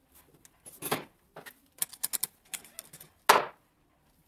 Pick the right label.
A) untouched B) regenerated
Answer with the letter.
A